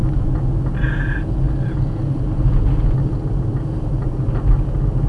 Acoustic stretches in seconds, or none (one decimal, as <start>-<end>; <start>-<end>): 0.0-5.1